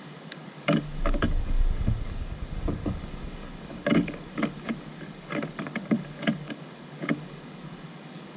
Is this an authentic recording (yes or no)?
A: no